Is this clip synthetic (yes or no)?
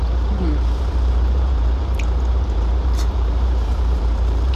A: yes